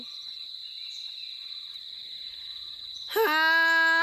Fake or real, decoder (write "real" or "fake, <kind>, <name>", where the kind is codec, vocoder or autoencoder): real